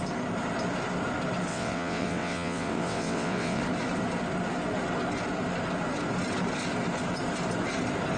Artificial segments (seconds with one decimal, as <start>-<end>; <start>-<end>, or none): 1.5-3.6